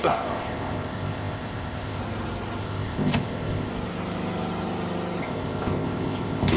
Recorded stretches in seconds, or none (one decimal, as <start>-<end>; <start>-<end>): 2.0-2.6; 3.7-5.2

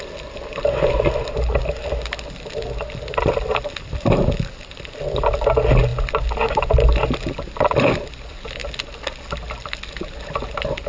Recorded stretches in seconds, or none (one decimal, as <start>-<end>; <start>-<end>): 0.0-10.9

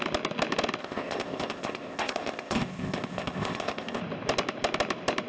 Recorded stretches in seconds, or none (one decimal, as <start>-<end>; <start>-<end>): 0.0-0.8; 4.0-5.3

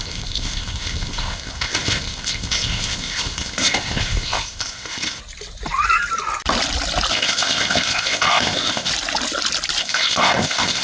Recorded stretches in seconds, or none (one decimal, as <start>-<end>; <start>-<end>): 5.2-7.1; 8.9-9.8

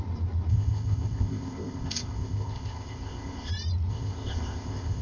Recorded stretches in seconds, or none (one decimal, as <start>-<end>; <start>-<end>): 0.0-0.5; 3.5-3.9